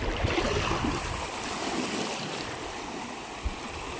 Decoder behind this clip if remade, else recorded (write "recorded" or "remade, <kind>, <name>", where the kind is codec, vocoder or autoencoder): remade, vocoder, BigVGAN v2